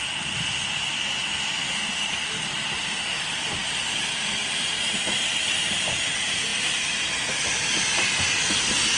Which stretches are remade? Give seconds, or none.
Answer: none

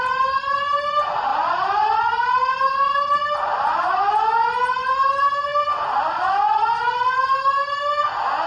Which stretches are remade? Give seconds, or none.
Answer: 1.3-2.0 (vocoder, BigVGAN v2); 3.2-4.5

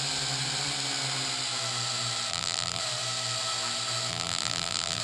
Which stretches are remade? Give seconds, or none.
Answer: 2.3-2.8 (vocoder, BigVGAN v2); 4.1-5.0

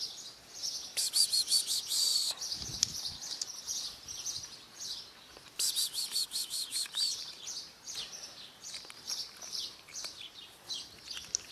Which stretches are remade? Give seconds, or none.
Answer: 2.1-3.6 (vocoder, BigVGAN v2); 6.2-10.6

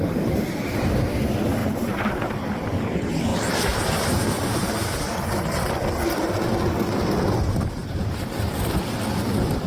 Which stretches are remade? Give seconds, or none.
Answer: 1.6-2.8 (vocoder, BigVGAN v2); 7.8-8.6

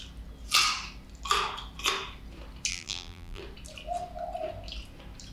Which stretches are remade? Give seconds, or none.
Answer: 2.7-3.4 (vocoder, BigVGAN v2)

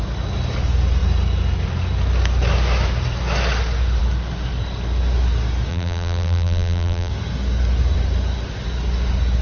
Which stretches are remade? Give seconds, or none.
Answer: 5.7-7.1 (vocoder, BigVGAN v2)

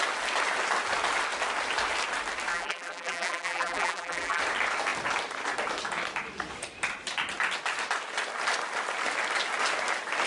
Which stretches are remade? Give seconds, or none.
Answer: 2.5-4.4 (vocoder, BigVGAN v2)